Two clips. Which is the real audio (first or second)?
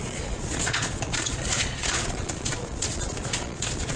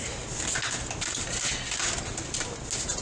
second